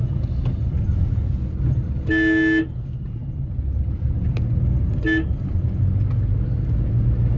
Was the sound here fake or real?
real